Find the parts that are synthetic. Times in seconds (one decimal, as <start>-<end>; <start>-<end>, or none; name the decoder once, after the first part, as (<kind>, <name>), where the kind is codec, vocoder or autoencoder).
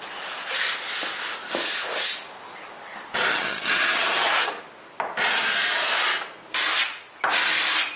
3.3-4.5 (vocoder, HiFi-GAN)